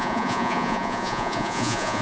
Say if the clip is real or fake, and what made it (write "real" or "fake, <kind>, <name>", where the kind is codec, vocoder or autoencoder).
fake, vocoder, Vocos